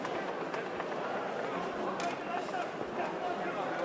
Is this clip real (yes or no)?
yes